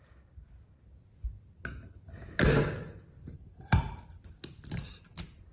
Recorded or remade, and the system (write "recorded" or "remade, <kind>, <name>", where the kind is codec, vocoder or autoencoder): recorded